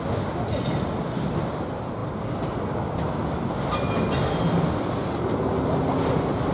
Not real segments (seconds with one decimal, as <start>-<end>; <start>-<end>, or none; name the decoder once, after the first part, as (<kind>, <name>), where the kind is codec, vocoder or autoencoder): none